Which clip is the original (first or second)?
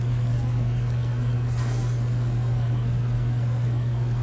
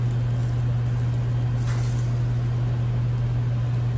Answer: second